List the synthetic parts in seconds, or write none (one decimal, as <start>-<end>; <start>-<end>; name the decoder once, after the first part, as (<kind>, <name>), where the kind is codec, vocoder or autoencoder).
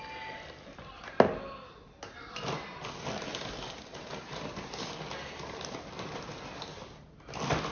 3.9-4.7 (vocoder, BigVGAN v2)